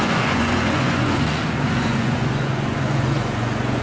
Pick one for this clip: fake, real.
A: fake